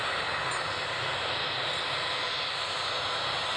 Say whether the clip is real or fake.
real